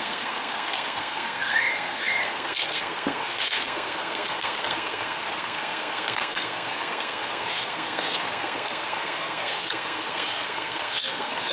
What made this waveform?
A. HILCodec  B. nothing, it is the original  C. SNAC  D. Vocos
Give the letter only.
C